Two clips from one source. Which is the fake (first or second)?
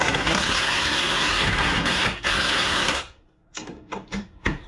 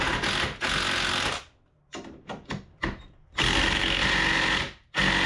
first